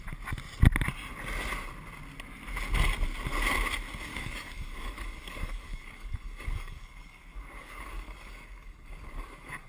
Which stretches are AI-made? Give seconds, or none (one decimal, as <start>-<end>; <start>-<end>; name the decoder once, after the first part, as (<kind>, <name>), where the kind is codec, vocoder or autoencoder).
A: 4.1-9.7 (codec, DAC)